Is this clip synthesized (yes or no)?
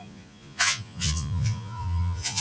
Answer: yes